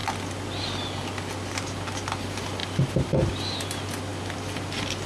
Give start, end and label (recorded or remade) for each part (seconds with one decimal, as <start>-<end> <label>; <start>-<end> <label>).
0.0-5.1 recorded